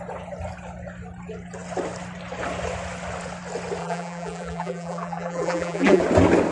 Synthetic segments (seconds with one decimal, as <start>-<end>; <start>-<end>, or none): 3.8-6.0